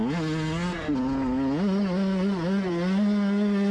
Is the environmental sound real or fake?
real